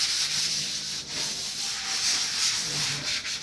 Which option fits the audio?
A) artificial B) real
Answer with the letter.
B